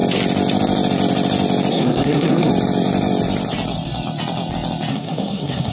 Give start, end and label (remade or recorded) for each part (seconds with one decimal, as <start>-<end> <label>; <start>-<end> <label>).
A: 0.0-1.7 recorded; 1.7-2.5 remade; 2.5-4.9 recorded; 4.9-5.7 remade